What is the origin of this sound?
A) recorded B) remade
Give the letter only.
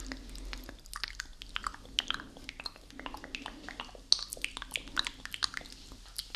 A